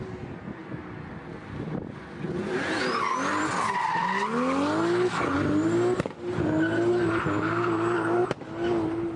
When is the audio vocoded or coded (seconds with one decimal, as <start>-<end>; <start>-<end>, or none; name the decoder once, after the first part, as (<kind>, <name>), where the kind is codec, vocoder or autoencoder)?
none